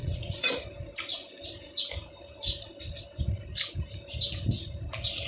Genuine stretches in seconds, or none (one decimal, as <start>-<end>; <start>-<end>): 0.5-5.3